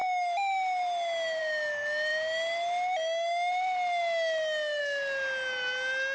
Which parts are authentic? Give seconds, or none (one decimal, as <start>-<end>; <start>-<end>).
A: 0.0-6.1